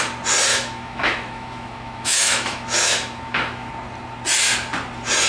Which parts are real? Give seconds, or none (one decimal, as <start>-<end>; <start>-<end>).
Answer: 0.0-0.5; 3.7-5.3